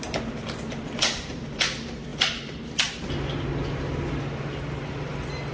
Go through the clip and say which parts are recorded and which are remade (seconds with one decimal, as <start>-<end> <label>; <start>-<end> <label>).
0.0-5.5 recorded